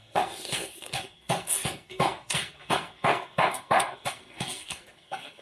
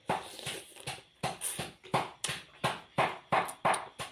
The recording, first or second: second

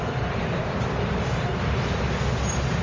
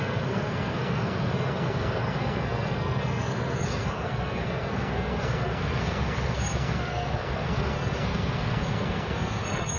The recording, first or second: first